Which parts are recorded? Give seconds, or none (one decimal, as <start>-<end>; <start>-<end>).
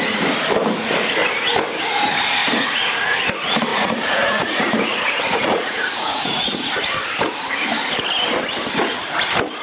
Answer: 0.0-2.4; 3.2-3.7; 6.8-9.6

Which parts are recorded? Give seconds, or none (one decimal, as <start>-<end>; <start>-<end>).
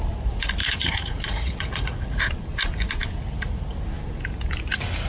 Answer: 0.0-0.6; 2.2-5.1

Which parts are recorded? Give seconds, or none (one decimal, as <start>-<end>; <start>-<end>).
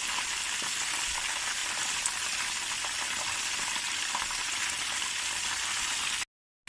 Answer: 0.0-6.7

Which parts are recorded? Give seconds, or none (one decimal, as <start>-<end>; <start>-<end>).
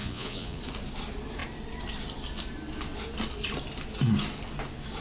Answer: 0.6-5.0